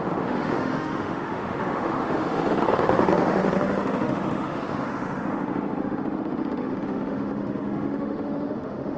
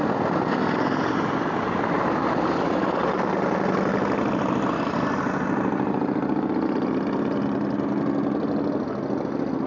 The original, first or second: second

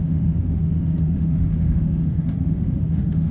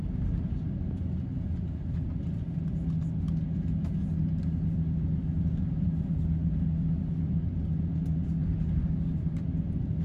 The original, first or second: second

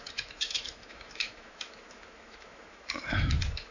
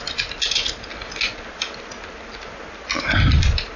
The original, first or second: second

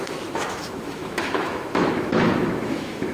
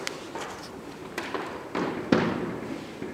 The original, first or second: second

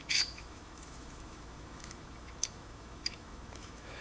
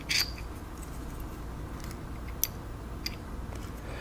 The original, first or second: second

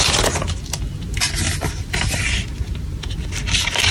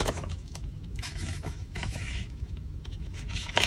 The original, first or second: first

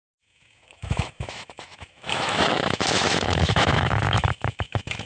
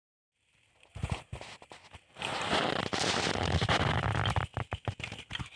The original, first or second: second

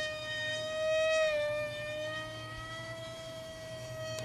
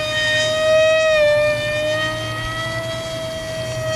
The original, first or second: second